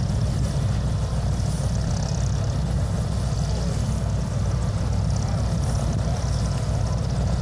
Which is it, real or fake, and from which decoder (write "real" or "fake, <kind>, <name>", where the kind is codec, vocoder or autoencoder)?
real